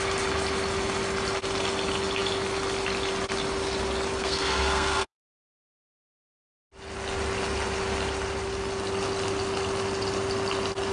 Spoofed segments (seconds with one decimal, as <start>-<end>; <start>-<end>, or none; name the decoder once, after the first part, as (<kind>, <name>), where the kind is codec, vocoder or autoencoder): 4.2-6.5 (codec, SNAC)